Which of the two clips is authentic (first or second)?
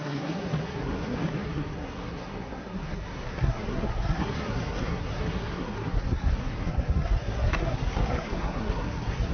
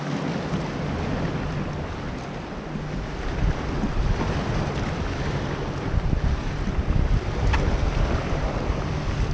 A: second